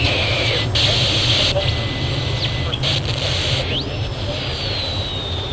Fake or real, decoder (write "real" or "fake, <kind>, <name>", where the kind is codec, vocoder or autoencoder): real